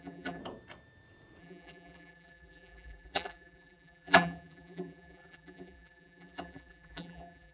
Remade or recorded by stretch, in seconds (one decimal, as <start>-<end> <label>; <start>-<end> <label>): 0.0-0.4 remade; 0.4-1.4 recorded; 1.4-7.5 remade